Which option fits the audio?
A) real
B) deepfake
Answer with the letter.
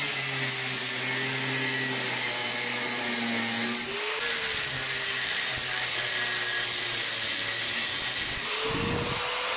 A